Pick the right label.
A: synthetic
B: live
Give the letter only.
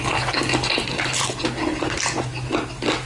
B